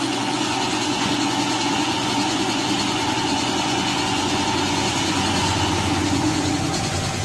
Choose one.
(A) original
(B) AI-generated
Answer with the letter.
B